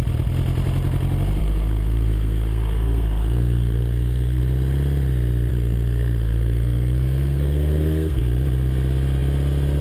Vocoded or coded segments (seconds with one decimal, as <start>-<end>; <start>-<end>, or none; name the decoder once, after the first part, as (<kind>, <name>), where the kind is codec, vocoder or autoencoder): 1.4-4.4 (codec, SNAC); 5.5-8.2